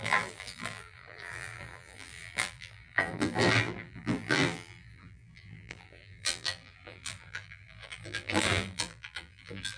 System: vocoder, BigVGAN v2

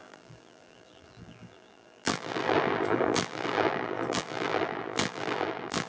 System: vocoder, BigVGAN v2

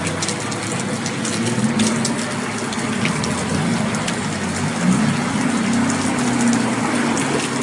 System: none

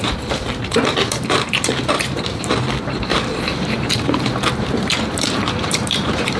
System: vocoder, BigVGAN v2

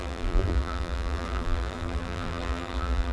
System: vocoder, BigVGAN v2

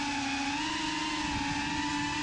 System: none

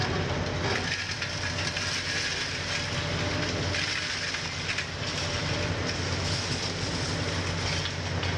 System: none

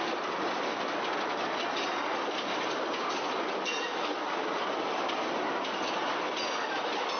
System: none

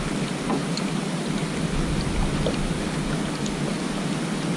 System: none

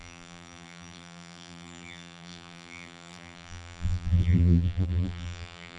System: vocoder, BigVGAN v2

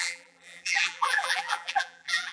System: vocoder, BigVGAN v2